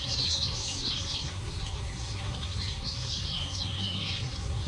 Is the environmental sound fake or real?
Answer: fake